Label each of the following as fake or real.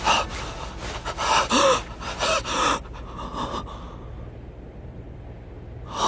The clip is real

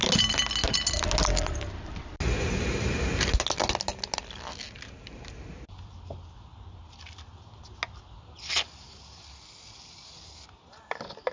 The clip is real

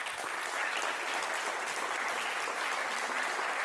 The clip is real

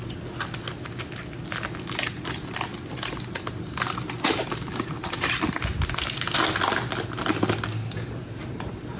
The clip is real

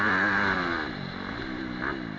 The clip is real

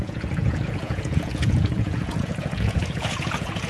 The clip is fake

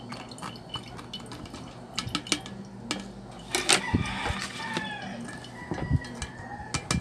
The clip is real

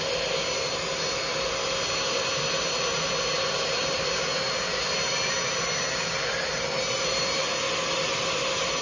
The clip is real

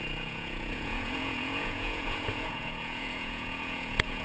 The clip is fake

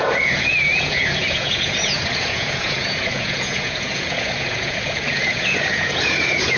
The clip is fake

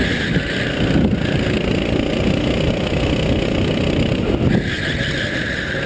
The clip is real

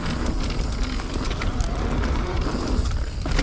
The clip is real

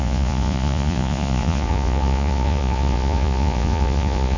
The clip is fake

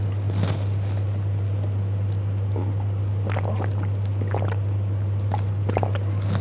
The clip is real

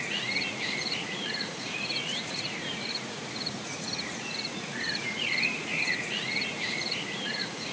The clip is fake